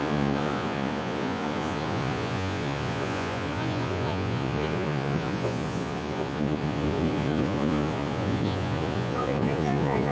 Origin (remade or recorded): remade